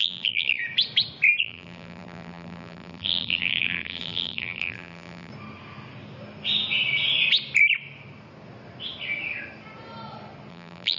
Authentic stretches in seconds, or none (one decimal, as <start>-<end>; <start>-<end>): 0.6-1.4; 5.3-10.5